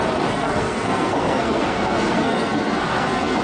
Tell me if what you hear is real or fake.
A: fake